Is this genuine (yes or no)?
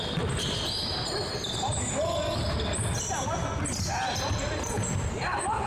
yes